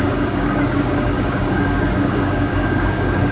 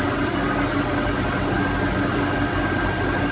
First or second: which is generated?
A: first